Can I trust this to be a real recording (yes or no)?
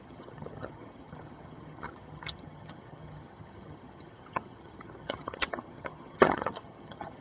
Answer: no